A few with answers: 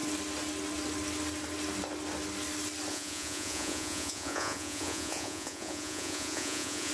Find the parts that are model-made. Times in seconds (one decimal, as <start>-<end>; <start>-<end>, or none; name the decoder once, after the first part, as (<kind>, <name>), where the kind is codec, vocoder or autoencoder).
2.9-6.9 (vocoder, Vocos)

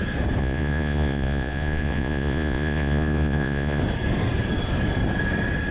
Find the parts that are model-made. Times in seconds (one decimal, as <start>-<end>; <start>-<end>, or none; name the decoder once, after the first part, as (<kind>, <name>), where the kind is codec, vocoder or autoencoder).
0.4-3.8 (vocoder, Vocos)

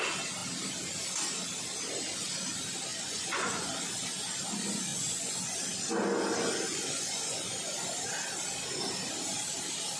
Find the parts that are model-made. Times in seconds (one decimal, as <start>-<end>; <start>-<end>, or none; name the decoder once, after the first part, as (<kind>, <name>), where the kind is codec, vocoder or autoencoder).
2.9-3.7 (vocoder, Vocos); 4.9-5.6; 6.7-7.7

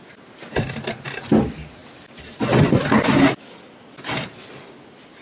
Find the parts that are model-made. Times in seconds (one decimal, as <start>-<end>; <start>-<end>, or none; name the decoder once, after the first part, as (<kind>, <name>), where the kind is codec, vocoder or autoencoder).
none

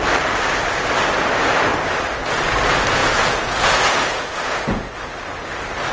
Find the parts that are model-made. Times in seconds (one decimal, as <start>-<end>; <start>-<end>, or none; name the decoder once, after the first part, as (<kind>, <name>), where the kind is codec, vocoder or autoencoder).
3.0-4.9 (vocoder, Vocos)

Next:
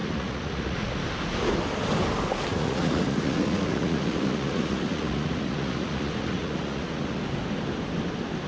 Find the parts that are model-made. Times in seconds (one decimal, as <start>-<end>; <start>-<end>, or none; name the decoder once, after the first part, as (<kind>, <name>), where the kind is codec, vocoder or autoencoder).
0.0-1.0 (vocoder, Vocos); 2.5-7.2